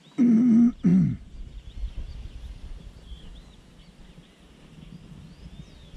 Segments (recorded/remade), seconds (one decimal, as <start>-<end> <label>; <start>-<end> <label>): 0.0-6.0 recorded